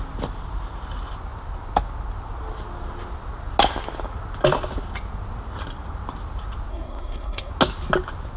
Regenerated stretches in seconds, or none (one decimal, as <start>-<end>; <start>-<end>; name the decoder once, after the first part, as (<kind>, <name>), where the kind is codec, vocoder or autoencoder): 6.7-7.5 (codec, SNAC)